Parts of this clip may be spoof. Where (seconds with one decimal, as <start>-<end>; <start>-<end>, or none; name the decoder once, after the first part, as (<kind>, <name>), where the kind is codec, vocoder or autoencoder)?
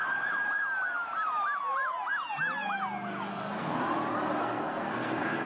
3.3-3.8 (codec, SNAC); 4.4-5.5